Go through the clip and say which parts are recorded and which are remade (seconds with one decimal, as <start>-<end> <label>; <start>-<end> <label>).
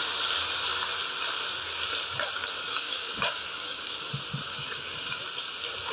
0.0-2.6 recorded; 2.6-4.1 remade; 4.1-4.5 recorded; 4.5-5.2 remade; 5.2-5.9 recorded